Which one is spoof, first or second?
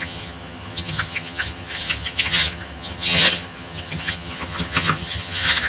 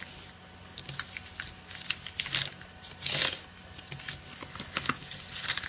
first